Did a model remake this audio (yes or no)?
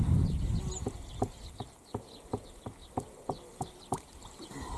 no